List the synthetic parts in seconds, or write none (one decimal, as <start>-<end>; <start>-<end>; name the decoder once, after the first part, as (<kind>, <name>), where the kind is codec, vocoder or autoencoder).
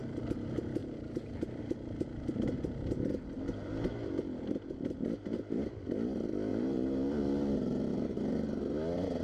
0.8-1.6 (vocoder, BigVGAN v2); 6.5-8.2